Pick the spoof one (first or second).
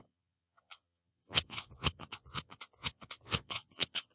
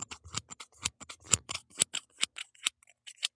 first